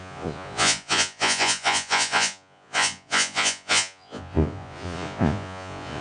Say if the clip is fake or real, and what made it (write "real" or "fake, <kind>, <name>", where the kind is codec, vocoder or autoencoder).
fake, vocoder, Vocos